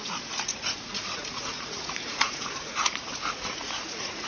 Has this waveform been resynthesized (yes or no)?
yes